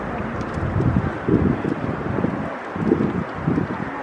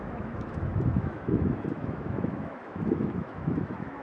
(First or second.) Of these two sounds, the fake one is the second